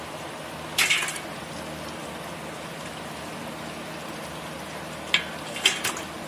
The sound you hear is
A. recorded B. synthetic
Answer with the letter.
A